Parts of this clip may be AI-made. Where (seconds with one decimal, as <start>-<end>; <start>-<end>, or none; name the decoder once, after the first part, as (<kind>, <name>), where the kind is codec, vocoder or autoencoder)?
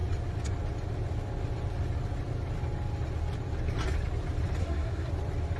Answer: 4.6-5.1 (codec, SNAC)